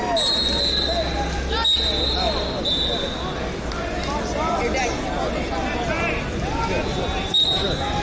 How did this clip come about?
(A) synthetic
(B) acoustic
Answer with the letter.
B